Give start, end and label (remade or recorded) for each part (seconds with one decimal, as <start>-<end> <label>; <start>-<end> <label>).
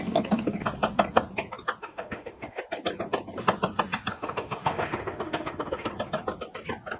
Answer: 0.0-1.8 recorded; 1.8-2.6 remade; 2.6-4.1 recorded; 4.1-5.9 remade; 5.9-7.0 recorded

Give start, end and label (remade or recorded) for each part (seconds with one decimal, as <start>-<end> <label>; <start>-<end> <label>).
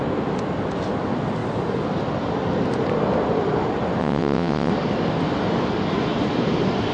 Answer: 0.0-4.0 recorded; 4.0-4.7 remade; 4.7-6.9 recorded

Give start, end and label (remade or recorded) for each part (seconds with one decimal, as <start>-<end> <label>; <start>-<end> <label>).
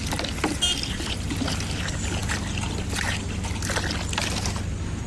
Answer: 0.0-5.1 recorded